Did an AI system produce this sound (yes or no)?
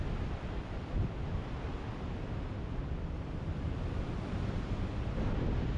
no